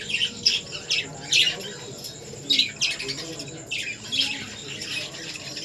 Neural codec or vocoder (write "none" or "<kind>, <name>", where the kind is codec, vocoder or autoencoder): none